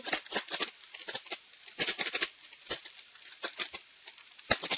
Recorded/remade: recorded